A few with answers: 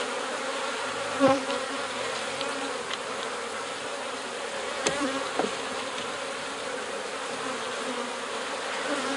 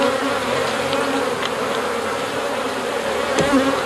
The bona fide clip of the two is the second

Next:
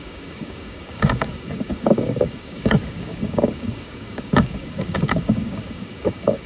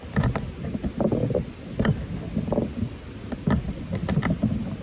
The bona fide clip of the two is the second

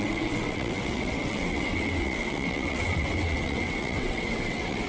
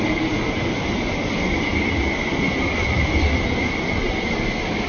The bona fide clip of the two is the second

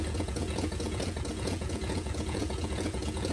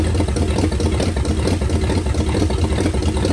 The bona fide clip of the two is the second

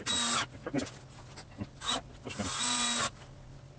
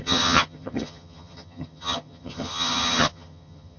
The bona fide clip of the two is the first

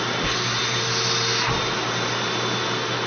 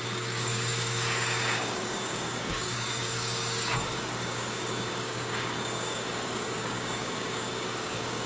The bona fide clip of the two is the first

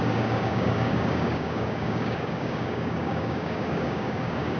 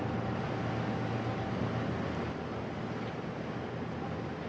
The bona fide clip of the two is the second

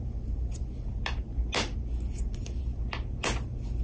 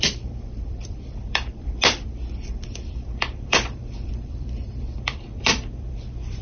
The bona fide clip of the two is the first